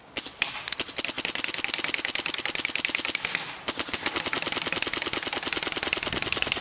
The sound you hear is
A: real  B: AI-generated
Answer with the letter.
A